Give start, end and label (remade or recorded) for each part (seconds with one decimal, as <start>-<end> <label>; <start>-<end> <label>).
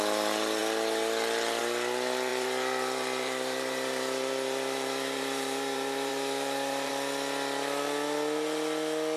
0.0-2.3 recorded; 2.3-6.9 remade; 6.9-9.2 recorded